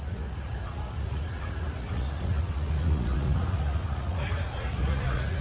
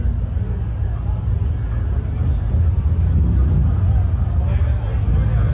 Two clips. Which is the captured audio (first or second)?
second